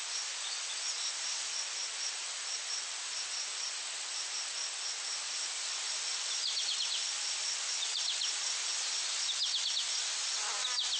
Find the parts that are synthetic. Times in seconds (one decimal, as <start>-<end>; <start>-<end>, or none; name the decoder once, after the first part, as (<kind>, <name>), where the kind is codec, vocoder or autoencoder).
3.5-4.4 (vocoder, Vocos)